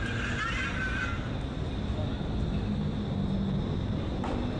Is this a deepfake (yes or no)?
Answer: no